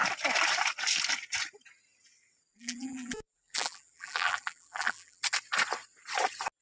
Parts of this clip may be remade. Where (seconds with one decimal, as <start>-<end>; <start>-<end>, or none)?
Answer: 2.5-5.2